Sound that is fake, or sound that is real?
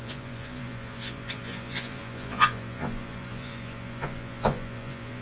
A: fake